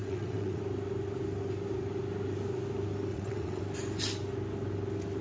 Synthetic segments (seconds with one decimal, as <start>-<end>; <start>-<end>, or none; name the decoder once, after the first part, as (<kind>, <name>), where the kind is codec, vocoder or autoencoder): 0.0-0.6 (vocoder, WaveNeXt); 3.1-3.6